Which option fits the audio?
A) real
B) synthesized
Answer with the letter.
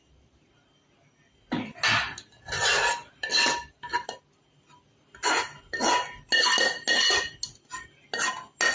A